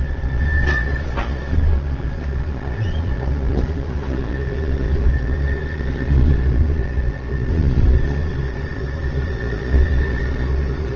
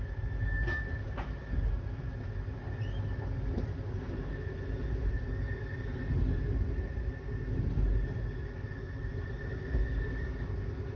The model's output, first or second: first